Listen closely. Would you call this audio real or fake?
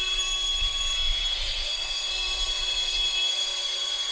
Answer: fake